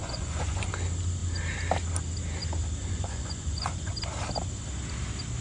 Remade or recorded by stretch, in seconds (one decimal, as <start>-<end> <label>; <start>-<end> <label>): 0.0-0.6 remade; 0.6-2.8 recorded; 2.8-3.9 remade; 3.9-5.4 recorded